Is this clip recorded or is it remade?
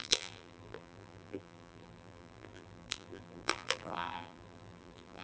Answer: remade